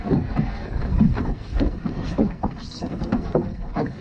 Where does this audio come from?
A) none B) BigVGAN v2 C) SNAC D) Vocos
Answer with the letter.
C